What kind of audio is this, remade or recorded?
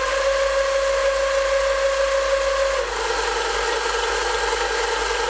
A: recorded